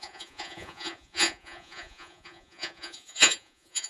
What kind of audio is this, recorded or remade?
remade